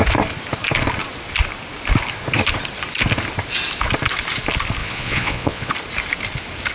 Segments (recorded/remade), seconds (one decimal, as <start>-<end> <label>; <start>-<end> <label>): 0.0-4.8 recorded; 4.8-5.7 remade; 5.7-6.7 recorded